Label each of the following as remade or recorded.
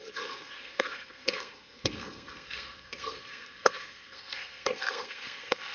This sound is remade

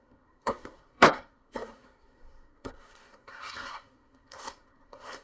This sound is remade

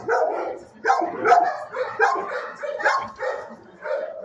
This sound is recorded